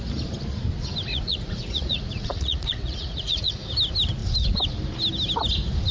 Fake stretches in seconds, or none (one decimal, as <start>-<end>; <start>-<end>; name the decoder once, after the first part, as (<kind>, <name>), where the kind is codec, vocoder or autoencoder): 1.1-3.5 (vocoder, Vocos)